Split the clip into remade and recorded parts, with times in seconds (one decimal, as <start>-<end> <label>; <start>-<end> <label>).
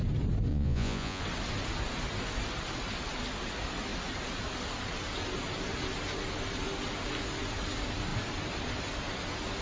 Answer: 0.0-0.5 recorded; 0.5-1.2 remade; 1.2-9.6 recorded